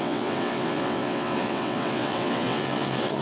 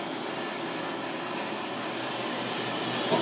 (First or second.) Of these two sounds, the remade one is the first